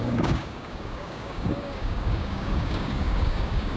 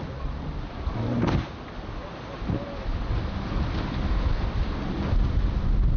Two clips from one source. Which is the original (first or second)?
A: second